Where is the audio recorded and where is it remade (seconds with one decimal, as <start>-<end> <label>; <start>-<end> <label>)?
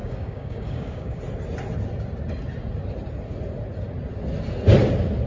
0.0-1.2 remade; 1.2-5.3 recorded